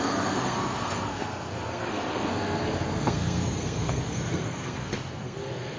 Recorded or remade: remade